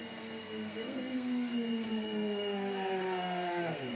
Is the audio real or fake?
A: fake